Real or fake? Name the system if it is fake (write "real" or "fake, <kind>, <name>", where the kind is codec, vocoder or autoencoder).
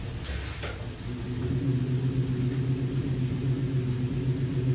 real